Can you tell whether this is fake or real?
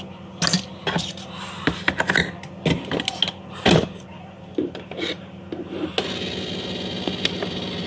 real